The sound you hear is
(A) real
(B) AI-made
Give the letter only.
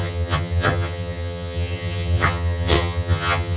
B